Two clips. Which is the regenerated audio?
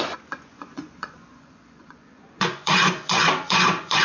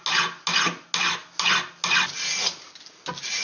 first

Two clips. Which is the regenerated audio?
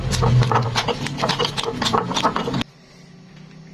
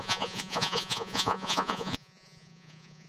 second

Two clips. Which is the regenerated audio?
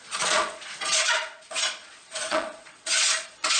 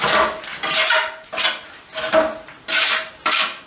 first